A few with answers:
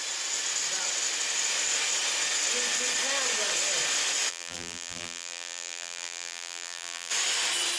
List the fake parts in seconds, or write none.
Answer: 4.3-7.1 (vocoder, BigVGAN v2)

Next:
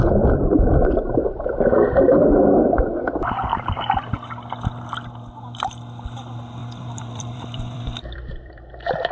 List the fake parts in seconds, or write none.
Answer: 3.5-4.1 (vocoder, BigVGAN v2); 6.6-8.7

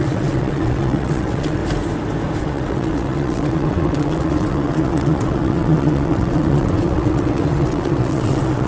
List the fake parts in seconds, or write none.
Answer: 0.0-1.6 (vocoder, WaveNeXt); 2.4-8.7

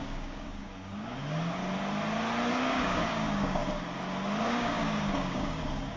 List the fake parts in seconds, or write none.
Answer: 0.0-1.6 (codec, DAC); 2.5-3.6; 4.5-6.0